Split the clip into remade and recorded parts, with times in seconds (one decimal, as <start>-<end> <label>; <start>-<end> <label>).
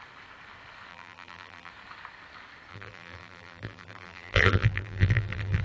0.0-0.9 recorded; 0.9-1.7 remade; 1.7-2.7 recorded; 2.7-5.6 remade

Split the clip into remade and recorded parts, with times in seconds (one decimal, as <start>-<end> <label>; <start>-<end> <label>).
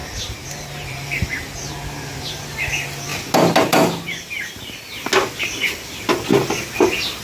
0.0-1.7 remade; 1.7-7.2 recorded